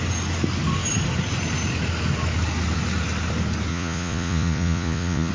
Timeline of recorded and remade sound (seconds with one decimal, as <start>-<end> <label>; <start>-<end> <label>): 0.0-3.7 recorded; 3.7-5.3 remade